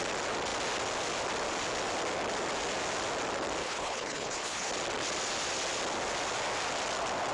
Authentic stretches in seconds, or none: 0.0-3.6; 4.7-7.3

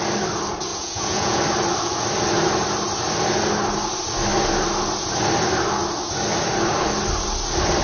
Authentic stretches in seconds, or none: 0.0-0.7; 1.4-7.8

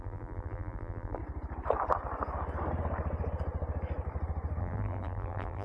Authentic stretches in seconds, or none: 1.2-4.6

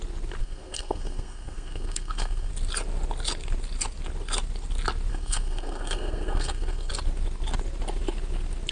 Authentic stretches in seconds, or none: 0.0-0.4; 2.5-5.1; 6.9-8.7

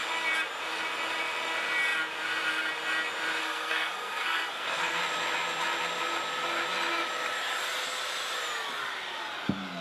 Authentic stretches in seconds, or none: 0.0-3.4; 5.0-9.8

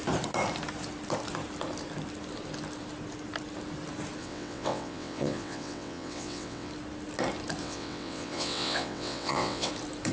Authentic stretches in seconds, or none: 0.0-4.2; 6.7-7.6; 9.7-10.1